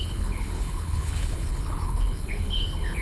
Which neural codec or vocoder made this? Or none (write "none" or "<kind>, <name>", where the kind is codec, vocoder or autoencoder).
codec, HILCodec